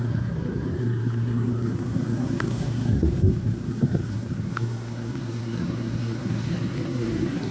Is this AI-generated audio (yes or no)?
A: yes